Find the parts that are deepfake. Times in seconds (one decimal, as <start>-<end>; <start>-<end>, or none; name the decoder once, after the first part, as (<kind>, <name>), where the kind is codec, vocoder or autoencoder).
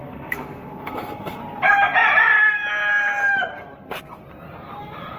0.0-1.4 (codec, SNAC)